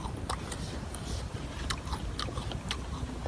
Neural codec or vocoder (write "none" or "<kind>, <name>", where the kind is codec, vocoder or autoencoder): none